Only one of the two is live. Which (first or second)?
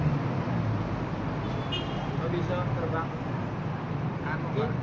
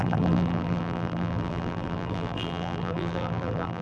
first